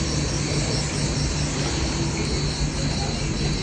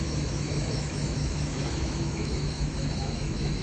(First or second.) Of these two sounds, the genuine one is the first